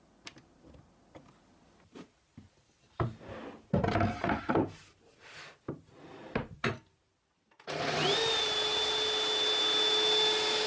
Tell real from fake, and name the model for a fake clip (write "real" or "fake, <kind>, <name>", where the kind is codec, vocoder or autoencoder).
real